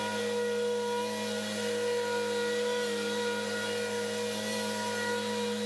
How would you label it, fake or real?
real